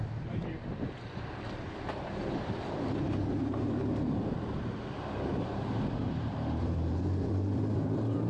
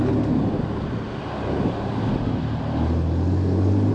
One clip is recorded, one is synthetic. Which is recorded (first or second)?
second